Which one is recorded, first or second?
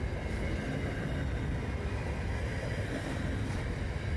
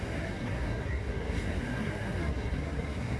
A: first